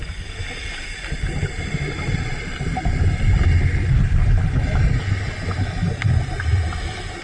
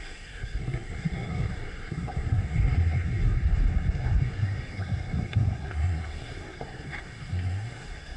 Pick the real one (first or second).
first